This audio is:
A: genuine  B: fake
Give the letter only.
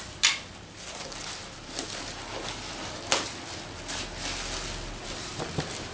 A